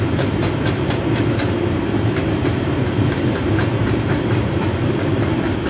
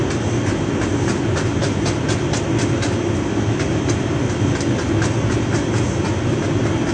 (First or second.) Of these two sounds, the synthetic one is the first